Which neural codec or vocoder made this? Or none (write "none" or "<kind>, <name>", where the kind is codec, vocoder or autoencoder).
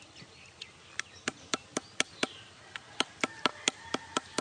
none